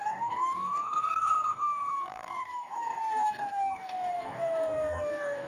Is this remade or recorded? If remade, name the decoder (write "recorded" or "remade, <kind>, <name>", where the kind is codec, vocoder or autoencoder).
remade, codec, DAC